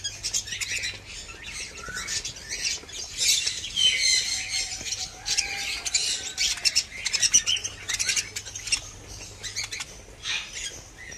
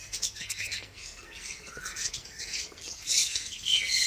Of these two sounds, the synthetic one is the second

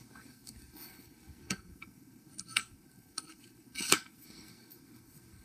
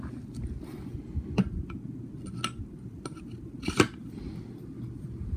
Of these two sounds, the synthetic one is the first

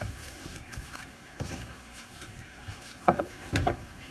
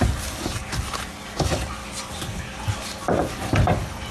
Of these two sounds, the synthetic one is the first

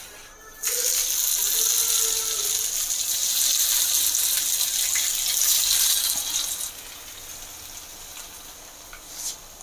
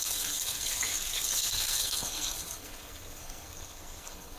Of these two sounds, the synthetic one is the second